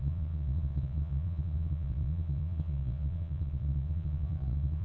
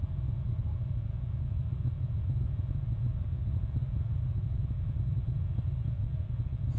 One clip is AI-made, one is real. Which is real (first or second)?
second